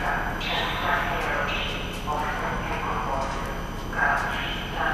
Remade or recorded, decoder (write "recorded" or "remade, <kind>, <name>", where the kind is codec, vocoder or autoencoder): recorded